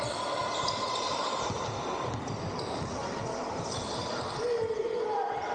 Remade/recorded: recorded